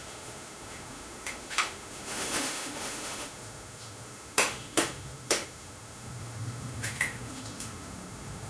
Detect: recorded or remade remade